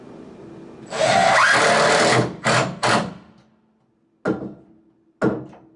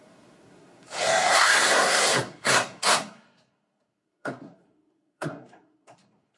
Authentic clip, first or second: first